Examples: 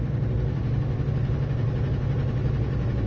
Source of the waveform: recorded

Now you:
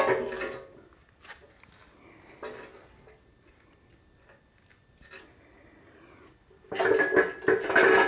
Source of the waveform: recorded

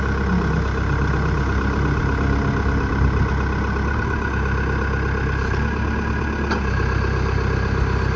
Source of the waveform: recorded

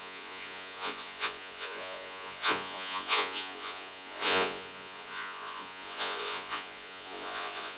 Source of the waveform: remade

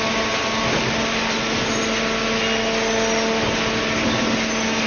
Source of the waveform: recorded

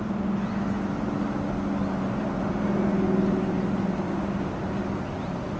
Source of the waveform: recorded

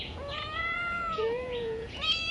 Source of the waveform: remade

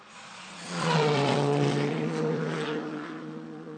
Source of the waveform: remade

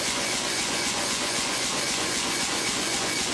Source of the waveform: remade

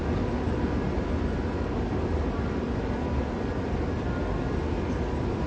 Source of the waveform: recorded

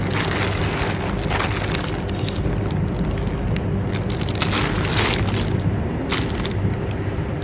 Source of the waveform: recorded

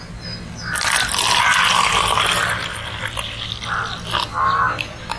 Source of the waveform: recorded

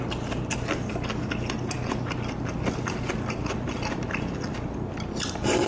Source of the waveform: recorded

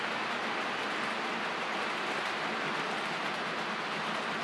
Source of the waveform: recorded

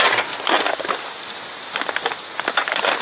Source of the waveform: recorded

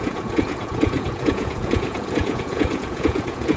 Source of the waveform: remade